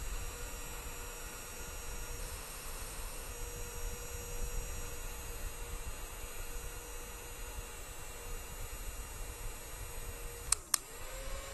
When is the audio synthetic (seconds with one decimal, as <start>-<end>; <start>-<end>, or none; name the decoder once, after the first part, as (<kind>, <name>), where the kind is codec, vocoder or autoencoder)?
2.2-3.3 (autoencoder, DAC-VAE)